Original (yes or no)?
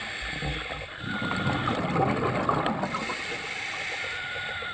yes